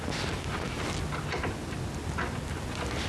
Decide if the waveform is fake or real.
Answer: real